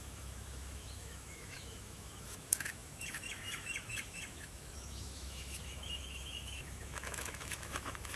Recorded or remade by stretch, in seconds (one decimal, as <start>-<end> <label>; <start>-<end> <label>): 0.0-8.2 remade